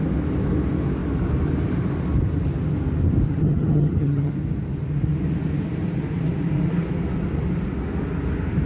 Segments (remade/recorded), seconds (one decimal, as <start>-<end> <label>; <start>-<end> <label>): 0.0-3.3 recorded; 3.3-4.3 remade; 4.3-8.7 recorded